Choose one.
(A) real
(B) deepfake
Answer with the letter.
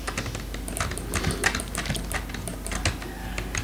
A